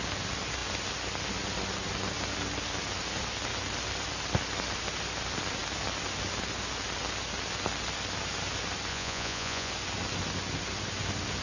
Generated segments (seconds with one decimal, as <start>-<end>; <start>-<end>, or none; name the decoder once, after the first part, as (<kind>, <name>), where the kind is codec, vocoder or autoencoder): 8.9-9.7 (vocoder, Vocos)

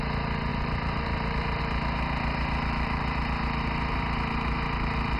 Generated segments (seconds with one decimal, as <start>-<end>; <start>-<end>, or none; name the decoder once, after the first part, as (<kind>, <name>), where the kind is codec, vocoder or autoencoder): 0.5-1.6 (vocoder, BigVGAN v2)

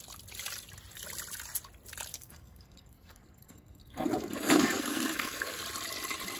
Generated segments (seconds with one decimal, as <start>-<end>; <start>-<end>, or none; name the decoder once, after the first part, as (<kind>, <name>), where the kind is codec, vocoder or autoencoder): 2.1-5.6 (codec, SNAC)

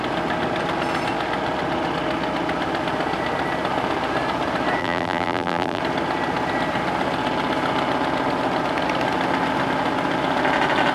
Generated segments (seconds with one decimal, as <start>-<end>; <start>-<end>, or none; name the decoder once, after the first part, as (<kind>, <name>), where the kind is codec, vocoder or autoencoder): 4.8-5.8 (vocoder, BigVGAN v2)

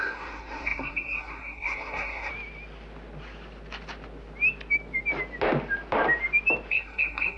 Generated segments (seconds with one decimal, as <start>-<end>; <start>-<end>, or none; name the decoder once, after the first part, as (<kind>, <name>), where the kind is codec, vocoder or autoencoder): 0.0-2.3 (codec, SNAC); 6.7-7.4

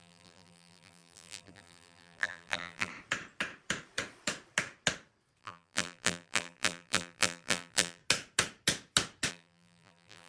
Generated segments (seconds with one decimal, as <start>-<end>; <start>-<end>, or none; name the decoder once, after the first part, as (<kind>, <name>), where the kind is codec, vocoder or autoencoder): 0.0-2.9 (vocoder, BigVGAN v2); 5.4-8.0; 9.3-10.3

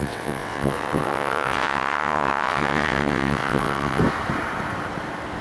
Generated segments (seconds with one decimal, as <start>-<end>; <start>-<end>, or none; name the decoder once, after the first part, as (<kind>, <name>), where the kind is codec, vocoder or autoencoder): 0.0-4.0 (vocoder, WaveNeXt)